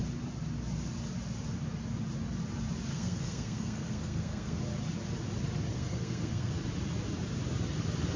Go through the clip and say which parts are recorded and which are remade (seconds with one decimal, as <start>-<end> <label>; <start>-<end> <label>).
0.0-2.9 recorded; 2.9-4.6 remade; 4.6-5.7 recorded; 5.7-6.5 remade; 6.5-8.2 recorded